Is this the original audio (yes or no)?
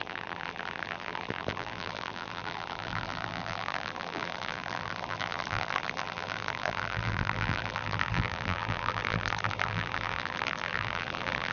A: no